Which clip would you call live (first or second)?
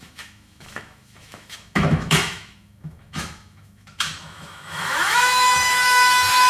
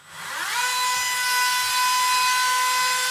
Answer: second